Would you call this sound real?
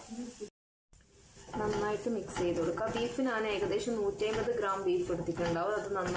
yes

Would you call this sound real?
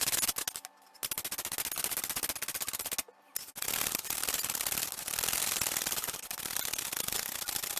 yes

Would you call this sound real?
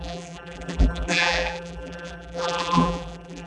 no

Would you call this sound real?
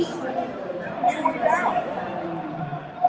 no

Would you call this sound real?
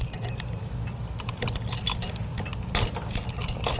yes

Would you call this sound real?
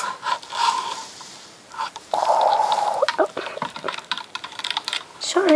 no